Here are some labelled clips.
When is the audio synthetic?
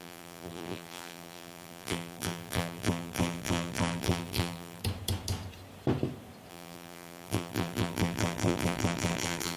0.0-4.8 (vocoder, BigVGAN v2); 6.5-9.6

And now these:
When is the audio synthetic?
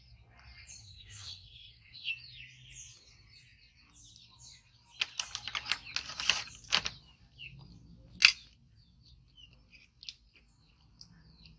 0.8-2.1 (codec, SNAC)